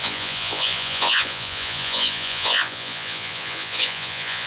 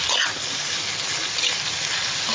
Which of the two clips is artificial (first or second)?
first